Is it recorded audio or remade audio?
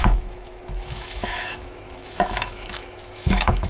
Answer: remade